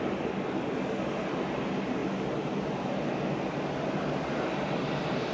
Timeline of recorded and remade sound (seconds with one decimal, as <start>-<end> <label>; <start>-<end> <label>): 0.0-5.3 recorded